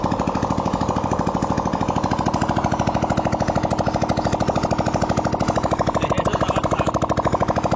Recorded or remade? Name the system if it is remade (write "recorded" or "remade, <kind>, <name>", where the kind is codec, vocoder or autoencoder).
recorded